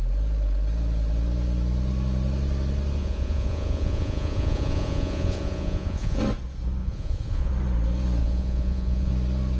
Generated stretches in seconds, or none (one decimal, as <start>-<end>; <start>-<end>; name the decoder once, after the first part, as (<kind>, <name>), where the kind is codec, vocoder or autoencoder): 3.0-6.2 (vocoder, Vocos); 6.8-7.5; 8.2-9.1